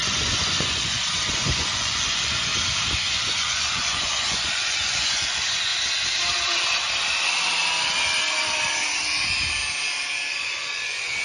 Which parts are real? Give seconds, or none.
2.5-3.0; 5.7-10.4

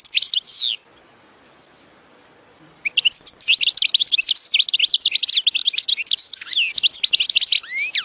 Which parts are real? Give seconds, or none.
0.0-0.8; 5.1-8.0

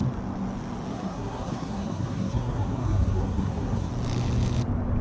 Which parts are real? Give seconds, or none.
0.0-0.9; 3.9-5.0

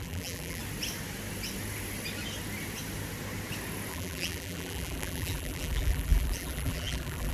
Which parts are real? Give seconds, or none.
0.6-3.9

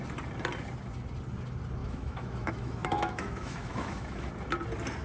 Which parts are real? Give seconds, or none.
0.0-1.8; 4.3-5.0

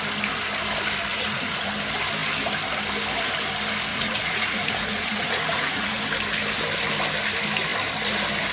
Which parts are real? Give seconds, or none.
0.0-1.1; 1.7-3.9; 6.0-8.5

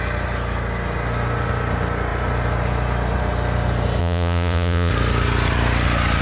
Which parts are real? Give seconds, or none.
0.0-4.0; 4.9-6.2

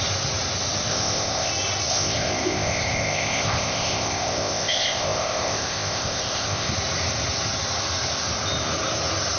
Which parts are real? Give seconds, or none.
0.0-0.9; 1.5-1.9; 6.7-9.4